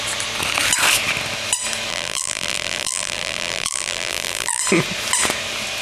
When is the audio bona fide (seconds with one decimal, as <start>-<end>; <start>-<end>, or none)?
0.0-1.9; 4.6-5.8